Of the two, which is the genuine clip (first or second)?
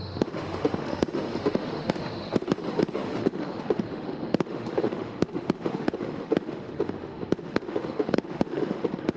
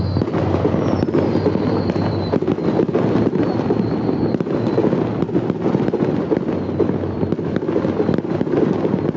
second